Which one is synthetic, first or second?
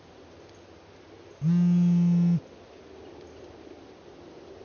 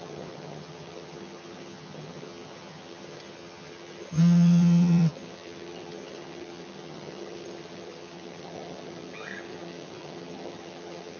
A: second